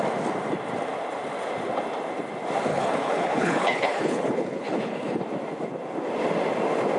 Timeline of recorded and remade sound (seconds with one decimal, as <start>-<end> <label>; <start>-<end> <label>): 0.0-2.7 recorded; 2.7-5.2 remade; 5.2-7.0 recorded